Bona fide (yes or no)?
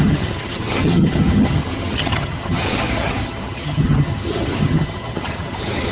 no